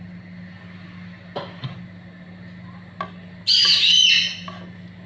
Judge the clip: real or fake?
real